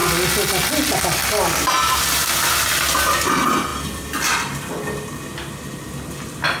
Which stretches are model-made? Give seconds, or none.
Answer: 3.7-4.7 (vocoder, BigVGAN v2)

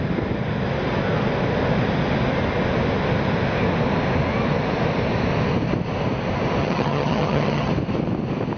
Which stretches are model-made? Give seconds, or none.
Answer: 6.6-7.7 (vocoder, HiFi-GAN)